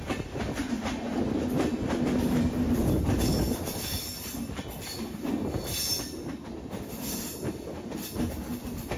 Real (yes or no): yes